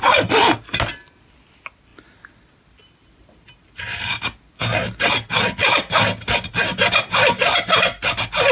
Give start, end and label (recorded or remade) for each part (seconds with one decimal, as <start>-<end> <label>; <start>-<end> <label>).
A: 0.0-8.5 recorded